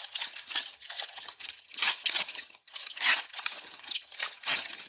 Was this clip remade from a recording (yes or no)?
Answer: yes